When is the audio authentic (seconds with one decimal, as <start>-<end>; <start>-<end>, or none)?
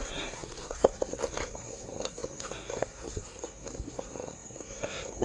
none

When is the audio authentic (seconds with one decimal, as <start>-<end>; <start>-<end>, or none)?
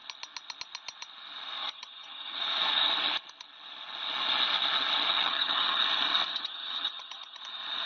0.0-1.6; 2.4-5.1; 5.8-6.3; 7.4-7.9